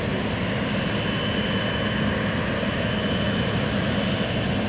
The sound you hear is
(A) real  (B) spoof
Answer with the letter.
A